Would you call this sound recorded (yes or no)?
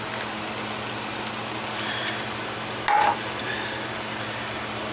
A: yes